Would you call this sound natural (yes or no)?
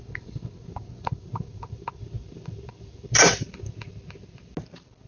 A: yes